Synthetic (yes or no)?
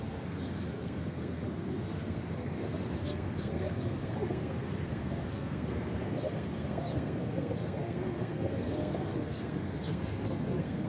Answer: yes